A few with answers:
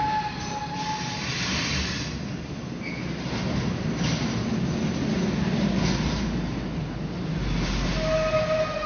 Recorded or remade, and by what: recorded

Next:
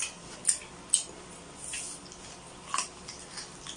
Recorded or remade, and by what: recorded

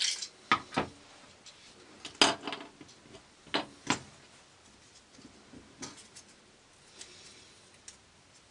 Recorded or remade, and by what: recorded